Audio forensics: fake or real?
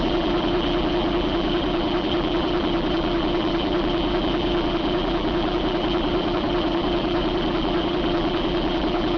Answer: fake